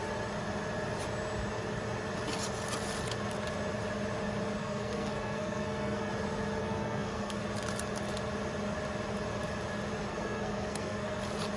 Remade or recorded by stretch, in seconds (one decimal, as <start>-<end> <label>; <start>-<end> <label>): 0.0-4.6 recorded; 4.6-6.1 remade; 6.1-6.6 recorded; 6.6-7.4 remade; 7.4-10.1 recorded; 10.1-11.2 remade; 11.2-11.6 recorded

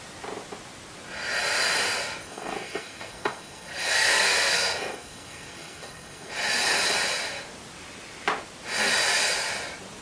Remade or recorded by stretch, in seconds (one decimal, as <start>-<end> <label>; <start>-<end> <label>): 0.0-2.2 recorded; 2.2-6.3 remade; 6.3-10.0 recorded

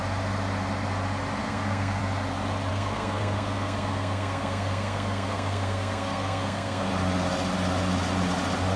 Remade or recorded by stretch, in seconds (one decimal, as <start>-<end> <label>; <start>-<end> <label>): 0.0-1.4 recorded; 1.4-2.0 remade; 2.0-2.7 recorded; 2.7-6.9 remade; 6.9-8.8 recorded

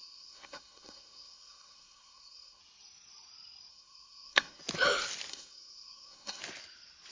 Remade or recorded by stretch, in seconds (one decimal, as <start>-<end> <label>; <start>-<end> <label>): 0.0-2.6 remade; 2.6-3.7 recorded; 3.7-4.6 remade; 4.6-5.3 recorded; 5.3-6.4 remade; 6.4-7.1 recorded

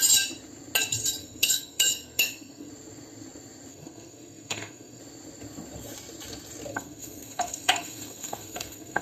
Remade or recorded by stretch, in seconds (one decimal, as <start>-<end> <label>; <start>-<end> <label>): 0.0-1.2 recorded; 1.2-2.7 remade; 2.7-3.7 recorded; 3.7-5.0 remade; 5.0-6.7 recorded; 6.7-9.0 remade

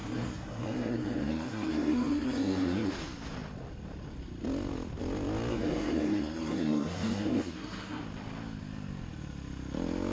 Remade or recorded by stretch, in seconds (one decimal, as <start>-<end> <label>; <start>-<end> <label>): 0.0-2.9 remade; 2.9-5.5 recorded; 5.5-8.0 remade; 8.0-10.1 recorded